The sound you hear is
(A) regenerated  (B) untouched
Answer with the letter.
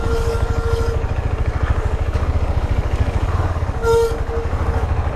A